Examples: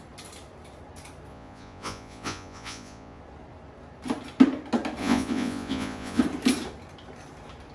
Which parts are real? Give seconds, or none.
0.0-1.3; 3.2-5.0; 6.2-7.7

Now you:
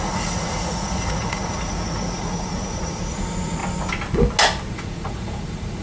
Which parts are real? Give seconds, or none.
3.6-4.7

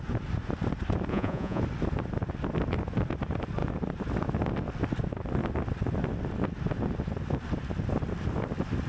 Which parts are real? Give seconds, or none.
0.0-1.1; 1.6-8.9

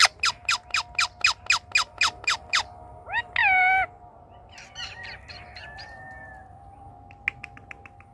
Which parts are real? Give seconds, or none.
0.0-8.1

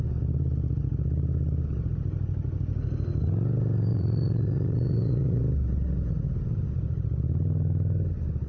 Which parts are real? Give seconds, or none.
0.0-3.9; 5.4-8.5

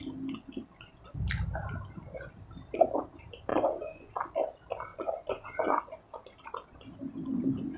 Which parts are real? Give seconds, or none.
0.0-3.5; 4.1-4.9; 5.8-7.8

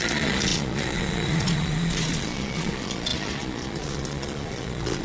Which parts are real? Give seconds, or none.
none